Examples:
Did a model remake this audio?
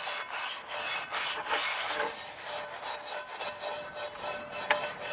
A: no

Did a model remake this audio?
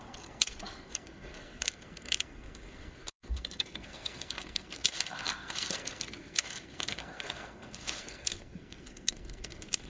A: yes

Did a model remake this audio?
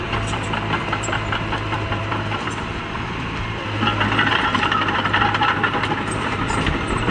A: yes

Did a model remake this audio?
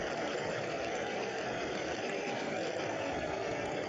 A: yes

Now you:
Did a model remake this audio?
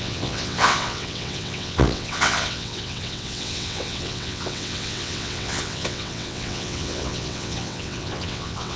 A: yes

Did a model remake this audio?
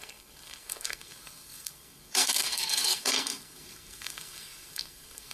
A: yes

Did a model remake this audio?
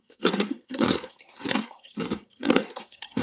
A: yes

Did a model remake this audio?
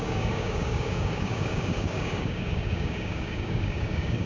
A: yes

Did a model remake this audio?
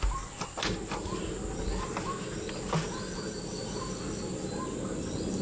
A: no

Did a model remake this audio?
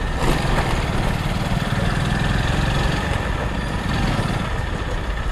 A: no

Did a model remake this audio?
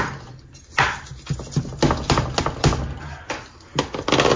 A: no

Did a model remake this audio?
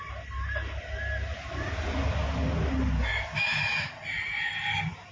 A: no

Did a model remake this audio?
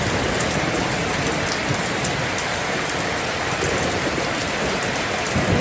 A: no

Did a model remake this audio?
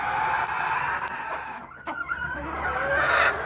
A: no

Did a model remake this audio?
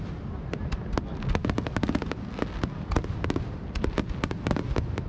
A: no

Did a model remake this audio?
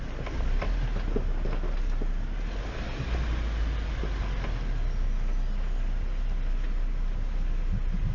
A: no